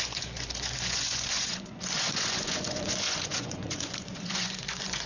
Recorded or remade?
remade